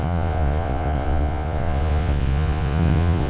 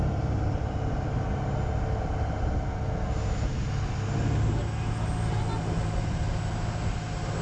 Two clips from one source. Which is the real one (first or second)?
second